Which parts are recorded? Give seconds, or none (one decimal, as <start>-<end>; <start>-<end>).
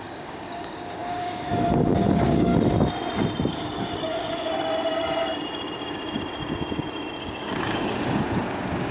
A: 2.5-3.5; 4.5-7.2